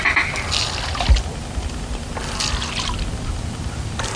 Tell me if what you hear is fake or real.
real